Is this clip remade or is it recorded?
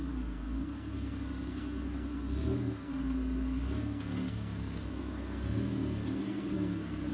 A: remade